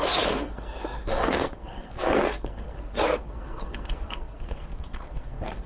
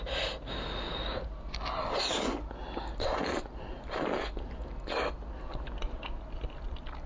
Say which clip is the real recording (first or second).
second